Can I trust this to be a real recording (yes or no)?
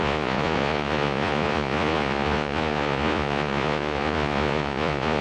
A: no